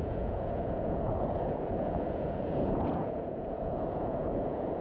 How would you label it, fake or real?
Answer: fake